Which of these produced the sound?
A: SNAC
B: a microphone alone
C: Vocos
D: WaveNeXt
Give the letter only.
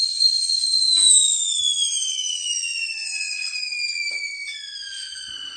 C